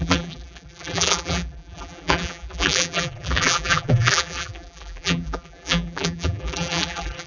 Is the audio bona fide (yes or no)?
no